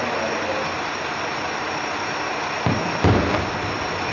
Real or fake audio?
real